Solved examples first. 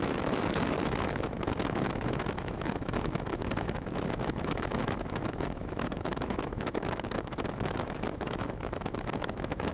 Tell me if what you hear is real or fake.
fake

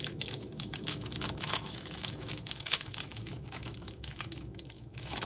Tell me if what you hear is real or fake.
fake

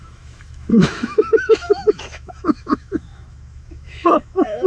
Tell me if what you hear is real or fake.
fake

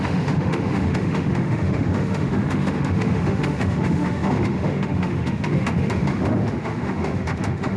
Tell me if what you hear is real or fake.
fake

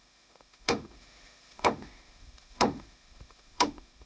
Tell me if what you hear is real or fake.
fake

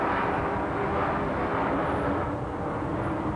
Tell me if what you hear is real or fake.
real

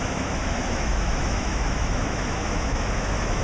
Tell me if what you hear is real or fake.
fake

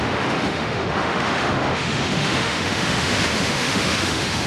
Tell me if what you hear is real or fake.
fake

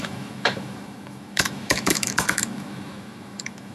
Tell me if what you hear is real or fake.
fake